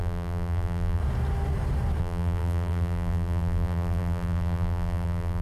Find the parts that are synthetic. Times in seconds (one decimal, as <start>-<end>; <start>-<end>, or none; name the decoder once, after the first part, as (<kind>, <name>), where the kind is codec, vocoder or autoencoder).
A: 0.0-1.0 (vocoder, BigVGAN v2); 2.0-5.4